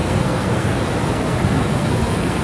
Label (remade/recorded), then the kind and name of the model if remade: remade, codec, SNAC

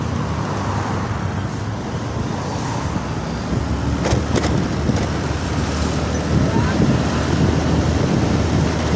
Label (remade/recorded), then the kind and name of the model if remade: recorded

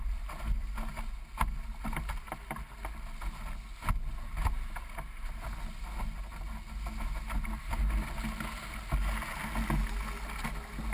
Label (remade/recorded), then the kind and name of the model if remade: recorded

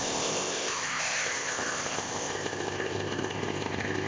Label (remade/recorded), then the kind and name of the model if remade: remade, codec, ZipCodec